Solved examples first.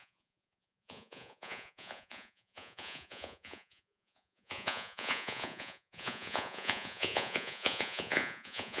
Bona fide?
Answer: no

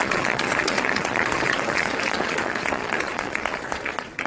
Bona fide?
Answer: no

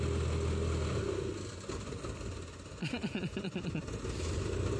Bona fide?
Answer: yes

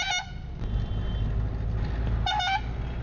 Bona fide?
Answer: yes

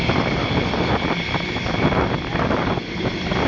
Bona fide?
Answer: yes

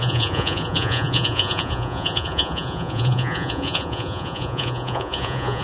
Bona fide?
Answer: no